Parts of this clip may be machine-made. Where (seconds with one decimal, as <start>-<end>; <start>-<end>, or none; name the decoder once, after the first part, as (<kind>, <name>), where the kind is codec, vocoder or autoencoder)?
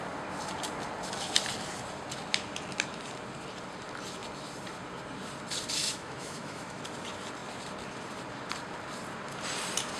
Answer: 5.8-6.8 (autoencoder, DAC-VAE)